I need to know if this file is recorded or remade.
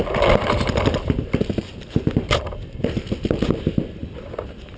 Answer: recorded